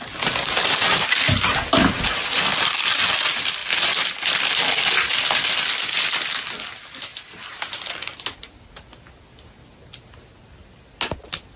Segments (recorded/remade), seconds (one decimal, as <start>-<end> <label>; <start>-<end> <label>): 0.0-11.6 recorded

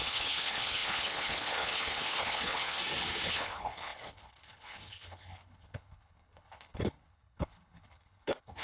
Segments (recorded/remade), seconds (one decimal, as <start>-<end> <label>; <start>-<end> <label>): 0.0-2.8 remade; 2.8-3.3 recorded; 3.3-8.6 remade

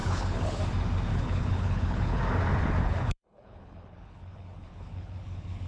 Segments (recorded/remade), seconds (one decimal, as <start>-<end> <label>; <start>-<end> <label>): 0.0-0.6 remade; 0.6-1.1 recorded; 1.1-2.2 remade; 2.2-2.8 recorded; 2.8-5.7 remade

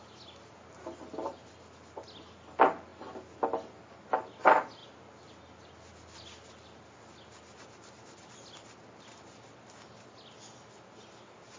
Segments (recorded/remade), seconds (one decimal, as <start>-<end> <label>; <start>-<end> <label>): 0.0-11.6 recorded

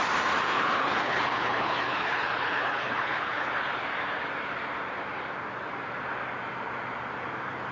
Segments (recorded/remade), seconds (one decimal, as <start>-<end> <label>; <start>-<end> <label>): 0.0-0.5 recorded; 0.5-3.5 remade; 3.5-7.7 recorded

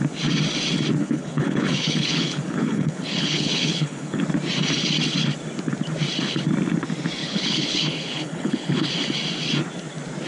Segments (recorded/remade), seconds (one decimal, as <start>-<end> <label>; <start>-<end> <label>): 0.0-1.0 recorded; 1.0-4.2 remade; 4.2-7.2 recorded; 7.2-8.9 remade; 8.9-10.3 recorded

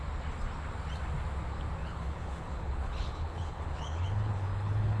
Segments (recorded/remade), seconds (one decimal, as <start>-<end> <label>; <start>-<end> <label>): 0.0-1.8 recorded; 1.8-5.0 remade